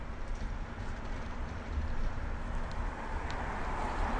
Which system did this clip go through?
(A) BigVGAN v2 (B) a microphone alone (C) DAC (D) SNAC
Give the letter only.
A